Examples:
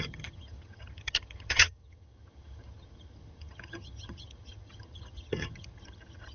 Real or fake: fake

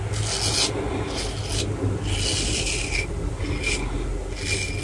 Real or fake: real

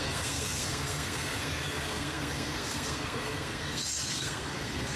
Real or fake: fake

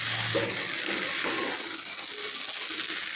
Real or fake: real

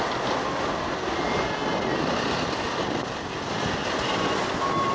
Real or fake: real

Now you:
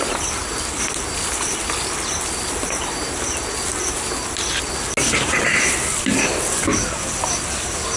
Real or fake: real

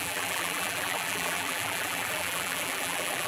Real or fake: fake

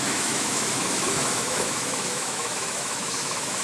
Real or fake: fake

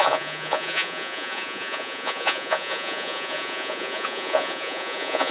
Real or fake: fake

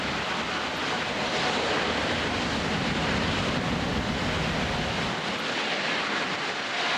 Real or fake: real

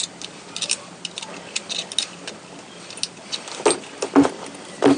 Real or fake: real